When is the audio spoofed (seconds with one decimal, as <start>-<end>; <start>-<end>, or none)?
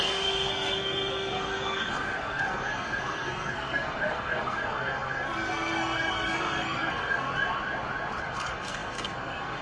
0.0-7.3; 8.2-9.6